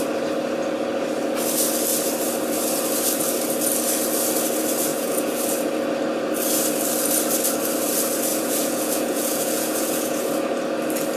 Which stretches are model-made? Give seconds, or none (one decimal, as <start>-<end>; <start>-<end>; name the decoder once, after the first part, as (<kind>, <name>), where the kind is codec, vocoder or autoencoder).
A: 4.9-5.4 (vocoder, Vocos); 8.3-10.3